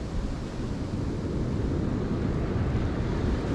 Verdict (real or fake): real